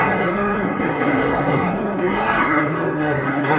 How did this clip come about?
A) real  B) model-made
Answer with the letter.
B